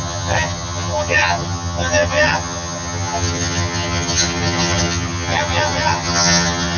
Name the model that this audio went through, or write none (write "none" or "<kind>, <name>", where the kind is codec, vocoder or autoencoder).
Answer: vocoder, HiFi-GAN